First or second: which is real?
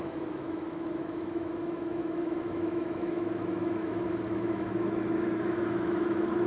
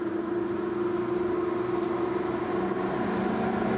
second